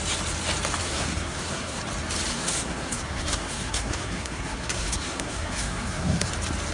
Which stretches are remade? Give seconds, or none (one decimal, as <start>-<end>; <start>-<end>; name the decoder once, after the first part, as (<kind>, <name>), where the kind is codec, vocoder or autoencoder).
0.8-1.8 (codec, SNAC); 2.3-6.3